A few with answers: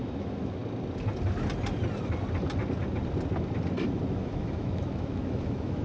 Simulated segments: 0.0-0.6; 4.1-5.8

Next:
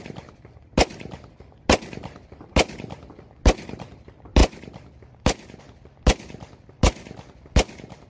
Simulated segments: none

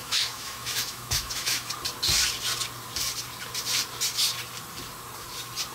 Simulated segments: 0.0-1.7

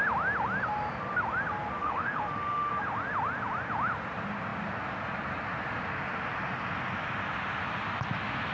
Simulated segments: 1.8-2.7

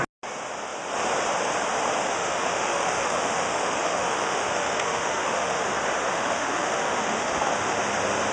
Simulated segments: 2.1-5.6; 6.1-7.8